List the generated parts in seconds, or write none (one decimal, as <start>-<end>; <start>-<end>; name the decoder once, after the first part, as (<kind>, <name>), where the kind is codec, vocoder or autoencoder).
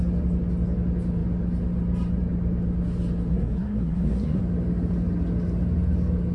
3.3-4.4 (codec, SNAC)